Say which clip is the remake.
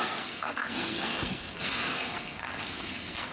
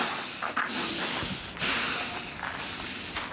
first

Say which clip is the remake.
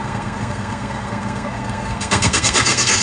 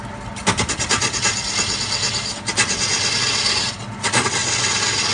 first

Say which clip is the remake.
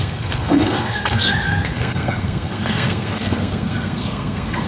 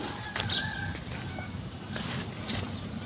first